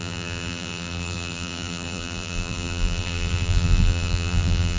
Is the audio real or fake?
fake